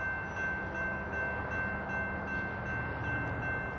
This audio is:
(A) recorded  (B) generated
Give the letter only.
A